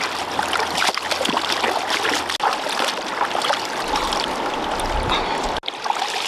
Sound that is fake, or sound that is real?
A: real